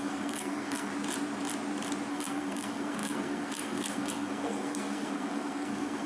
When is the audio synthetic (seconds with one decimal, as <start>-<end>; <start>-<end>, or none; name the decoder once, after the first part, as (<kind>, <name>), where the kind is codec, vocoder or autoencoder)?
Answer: 0.0-0.9 (codec, SNAC); 2.1-6.1

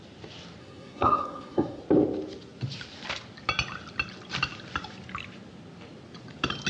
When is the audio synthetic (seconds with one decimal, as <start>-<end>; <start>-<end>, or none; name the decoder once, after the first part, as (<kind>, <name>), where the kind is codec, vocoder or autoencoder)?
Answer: 0.6-1.8 (codec, SNAC)

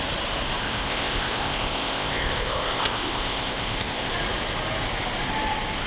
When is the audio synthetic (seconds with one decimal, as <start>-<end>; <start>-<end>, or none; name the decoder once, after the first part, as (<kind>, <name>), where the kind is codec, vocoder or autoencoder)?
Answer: 0.6-4.1 (codec, ZipCodec)

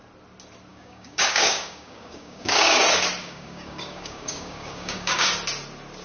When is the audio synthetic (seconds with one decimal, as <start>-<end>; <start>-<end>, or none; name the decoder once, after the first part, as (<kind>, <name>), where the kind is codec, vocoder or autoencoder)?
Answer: 0.7-2.8 (codec, DAC); 3.2-5.3

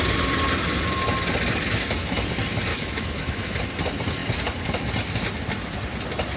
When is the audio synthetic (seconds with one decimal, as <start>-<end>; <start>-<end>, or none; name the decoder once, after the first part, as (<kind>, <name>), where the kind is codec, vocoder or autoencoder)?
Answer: 2.7-3.6 (autoencoder, DAC-VAE)

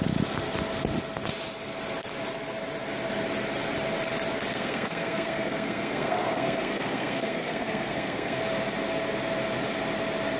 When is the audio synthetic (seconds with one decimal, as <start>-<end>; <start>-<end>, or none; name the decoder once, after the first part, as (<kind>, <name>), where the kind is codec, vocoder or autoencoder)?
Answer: 4.5-8.4 (codec, SNAC)

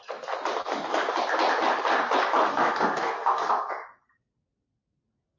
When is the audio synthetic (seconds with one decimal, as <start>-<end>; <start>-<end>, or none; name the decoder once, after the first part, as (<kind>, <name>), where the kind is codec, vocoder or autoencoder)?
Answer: 2.5-3.7 (codec, SNAC)

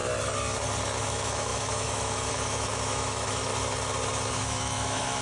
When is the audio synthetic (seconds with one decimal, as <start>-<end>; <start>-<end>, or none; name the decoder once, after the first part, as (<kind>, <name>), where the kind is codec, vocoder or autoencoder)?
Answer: 1.0-3.5 (autoencoder, DAC-VAE); 4.3-5.2